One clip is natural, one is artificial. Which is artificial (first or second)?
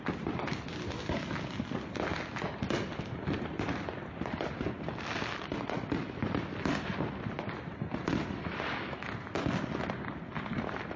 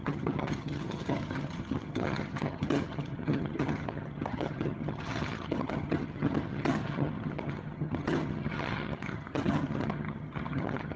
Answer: second